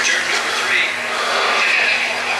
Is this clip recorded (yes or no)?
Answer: yes